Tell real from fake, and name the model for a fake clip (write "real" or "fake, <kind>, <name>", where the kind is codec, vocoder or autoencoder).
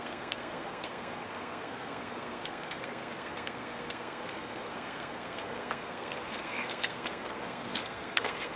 fake, codec, SNAC